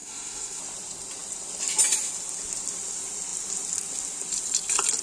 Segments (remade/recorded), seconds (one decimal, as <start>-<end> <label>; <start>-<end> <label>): 0.0-0.6 remade; 0.6-5.0 recorded